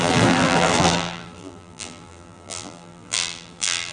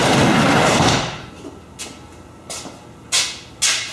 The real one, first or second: second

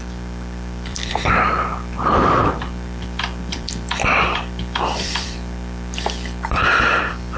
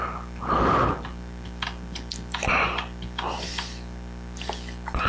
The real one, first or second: second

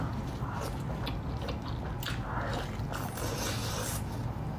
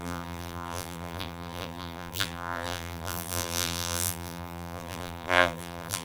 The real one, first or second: first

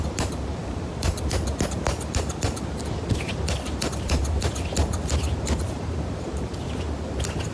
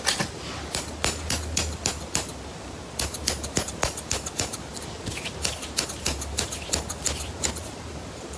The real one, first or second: second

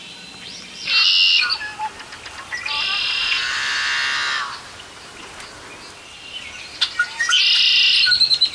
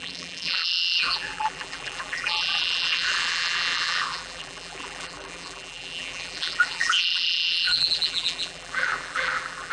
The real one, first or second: first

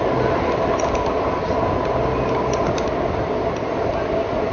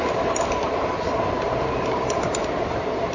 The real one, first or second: first